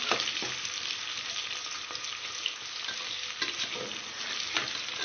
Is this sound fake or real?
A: real